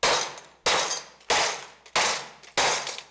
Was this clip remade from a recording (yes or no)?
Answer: no